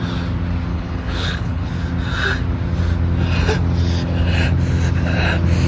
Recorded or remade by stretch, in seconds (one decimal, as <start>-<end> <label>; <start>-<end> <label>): 0.0-0.7 recorded; 0.7-1.7 remade; 1.7-5.7 recorded